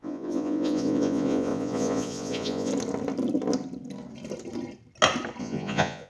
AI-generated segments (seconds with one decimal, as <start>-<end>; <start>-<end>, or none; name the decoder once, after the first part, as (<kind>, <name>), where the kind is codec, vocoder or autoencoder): 0.0-2.7 (vocoder, Vocos); 5.4-6.1